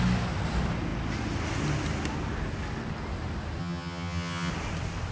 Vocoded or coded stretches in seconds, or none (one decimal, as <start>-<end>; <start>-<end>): 3.6-4.5